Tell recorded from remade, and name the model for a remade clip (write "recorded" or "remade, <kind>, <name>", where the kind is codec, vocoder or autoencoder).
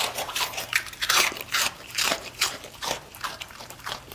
remade, vocoder, BigVGAN v2